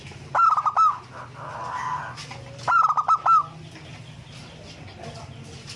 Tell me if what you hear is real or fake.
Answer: real